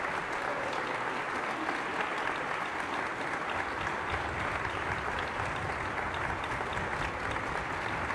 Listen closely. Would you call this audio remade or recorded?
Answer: recorded